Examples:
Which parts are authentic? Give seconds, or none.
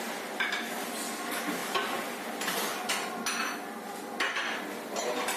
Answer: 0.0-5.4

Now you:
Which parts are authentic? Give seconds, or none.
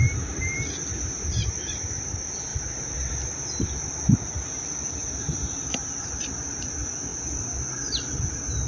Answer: none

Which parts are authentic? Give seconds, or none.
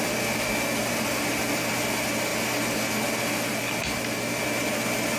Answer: 0.0-5.2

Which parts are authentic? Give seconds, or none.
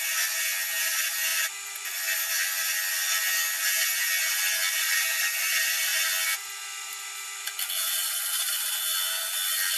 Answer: 0.0-9.8